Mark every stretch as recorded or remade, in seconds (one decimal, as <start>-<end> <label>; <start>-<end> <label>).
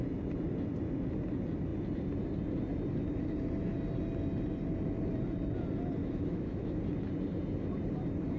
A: 0.0-6.0 recorded; 6.0-6.8 remade; 6.8-8.4 recorded